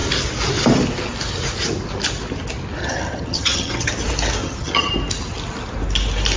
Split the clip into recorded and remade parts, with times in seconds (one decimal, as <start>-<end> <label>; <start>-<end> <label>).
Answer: 0.0-2.8 recorded; 2.8-3.9 remade; 3.9-4.4 recorded; 4.4-4.9 remade; 4.9-6.4 recorded